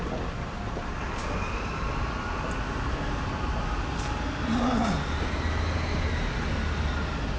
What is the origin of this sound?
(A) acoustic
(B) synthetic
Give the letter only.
A